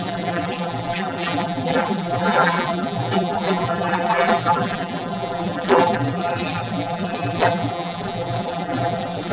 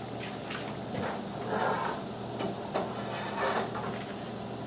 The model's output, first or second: first